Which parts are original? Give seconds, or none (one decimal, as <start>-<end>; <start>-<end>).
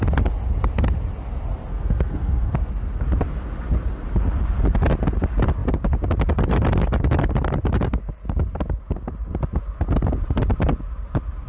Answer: 0.0-1.7; 2.7-11.5